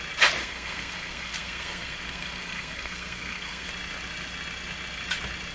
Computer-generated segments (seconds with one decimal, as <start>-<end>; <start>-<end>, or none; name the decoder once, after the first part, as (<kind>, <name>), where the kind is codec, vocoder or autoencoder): 0.4-3.7 (codec, SNAC)